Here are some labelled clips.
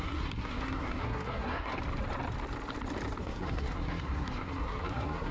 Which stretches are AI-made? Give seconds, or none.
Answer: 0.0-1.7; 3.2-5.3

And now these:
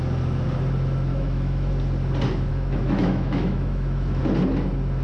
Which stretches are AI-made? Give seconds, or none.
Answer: 1.1-1.7; 2.5-4.2